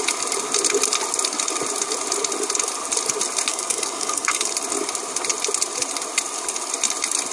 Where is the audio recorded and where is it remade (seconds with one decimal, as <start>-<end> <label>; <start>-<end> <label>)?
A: 0.0-3.5 recorded; 3.5-4.5 remade; 4.5-7.3 recorded